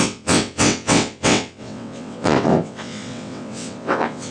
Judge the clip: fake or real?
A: fake